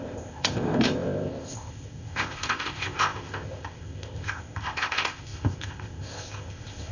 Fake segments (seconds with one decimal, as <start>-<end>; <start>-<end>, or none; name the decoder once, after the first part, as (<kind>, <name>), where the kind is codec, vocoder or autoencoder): 0.0-6.9 (codec, ZipCodec)